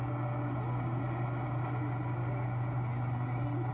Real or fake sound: real